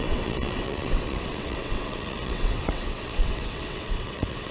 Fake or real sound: fake